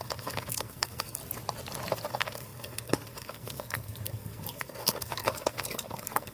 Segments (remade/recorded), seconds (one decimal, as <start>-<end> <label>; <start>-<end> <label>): 0.0-1.2 remade; 1.2-2.1 recorded; 2.1-6.3 remade